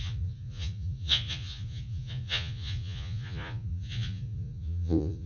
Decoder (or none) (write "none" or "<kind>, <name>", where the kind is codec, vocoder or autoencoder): vocoder, Vocos